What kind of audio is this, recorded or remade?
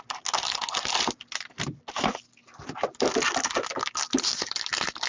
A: recorded